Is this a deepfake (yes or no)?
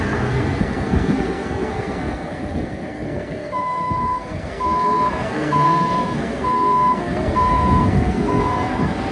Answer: yes